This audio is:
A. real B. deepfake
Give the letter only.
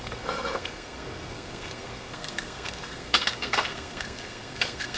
B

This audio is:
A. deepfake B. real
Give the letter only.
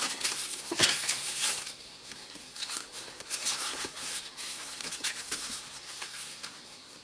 A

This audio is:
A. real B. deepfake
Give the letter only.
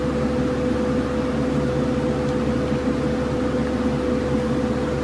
A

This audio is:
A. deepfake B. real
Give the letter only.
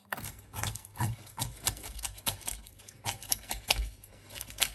A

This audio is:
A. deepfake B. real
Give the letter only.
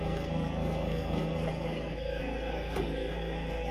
A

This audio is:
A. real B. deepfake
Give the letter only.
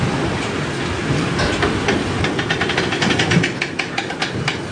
A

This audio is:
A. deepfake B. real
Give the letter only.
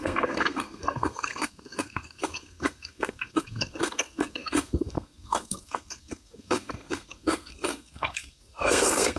A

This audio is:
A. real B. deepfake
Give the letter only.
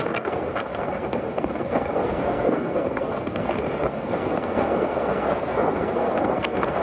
B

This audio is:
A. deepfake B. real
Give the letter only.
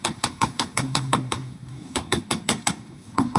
A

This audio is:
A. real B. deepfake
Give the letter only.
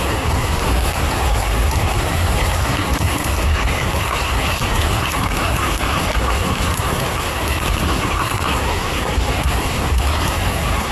B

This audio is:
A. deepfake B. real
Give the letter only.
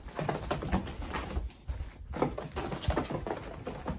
B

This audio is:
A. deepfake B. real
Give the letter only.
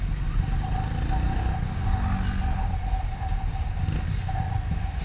B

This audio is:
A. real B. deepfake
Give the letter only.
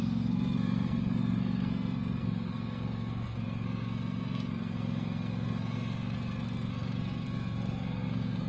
B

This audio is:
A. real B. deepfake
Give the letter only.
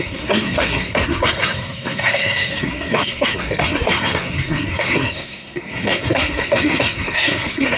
B